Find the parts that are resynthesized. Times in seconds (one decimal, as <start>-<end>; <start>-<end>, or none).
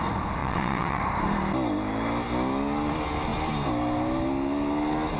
0.4-1.0